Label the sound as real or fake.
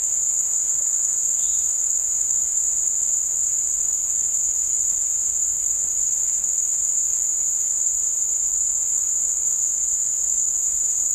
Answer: fake